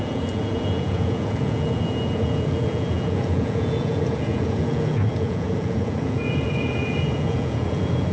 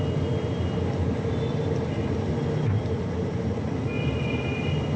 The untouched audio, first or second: second